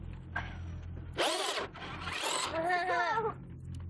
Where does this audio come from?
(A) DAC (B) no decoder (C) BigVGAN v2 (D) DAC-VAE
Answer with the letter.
B